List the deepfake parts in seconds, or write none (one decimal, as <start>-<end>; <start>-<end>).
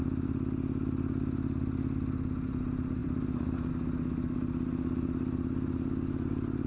3.0-3.7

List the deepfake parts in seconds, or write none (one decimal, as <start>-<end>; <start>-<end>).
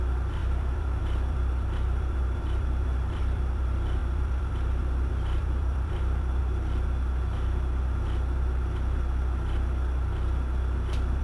0.0-6.4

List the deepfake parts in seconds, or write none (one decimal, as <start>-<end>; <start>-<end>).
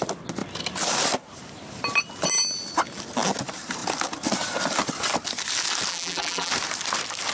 5.9-6.5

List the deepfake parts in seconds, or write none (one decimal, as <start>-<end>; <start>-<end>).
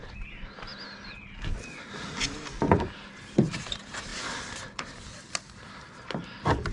0.0-0.7; 3.3-6.7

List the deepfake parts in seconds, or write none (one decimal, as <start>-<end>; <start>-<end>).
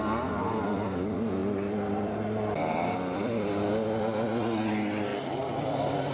1.4-4.0; 5.1-6.1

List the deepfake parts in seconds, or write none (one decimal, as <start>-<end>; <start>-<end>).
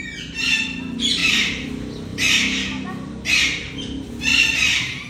1.2-1.7; 4.3-5.1